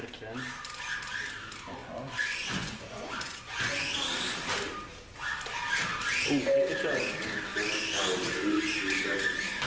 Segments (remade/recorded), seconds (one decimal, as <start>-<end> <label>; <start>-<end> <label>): 0.0-1.8 recorded; 1.8-3.9 remade; 3.9-9.7 recorded